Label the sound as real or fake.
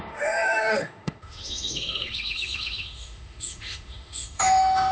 fake